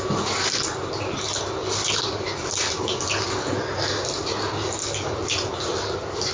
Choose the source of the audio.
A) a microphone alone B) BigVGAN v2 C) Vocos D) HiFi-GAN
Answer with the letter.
A